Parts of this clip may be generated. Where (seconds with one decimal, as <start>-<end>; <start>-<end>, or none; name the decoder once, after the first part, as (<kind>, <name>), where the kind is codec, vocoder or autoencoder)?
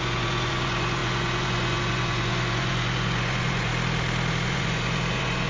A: 0.0-3.7 (vocoder, Vocos); 4.4-5.5